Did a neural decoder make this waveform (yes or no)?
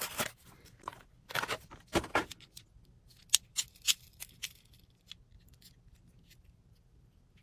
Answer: no